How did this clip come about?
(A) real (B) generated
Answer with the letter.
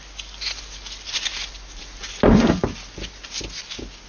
A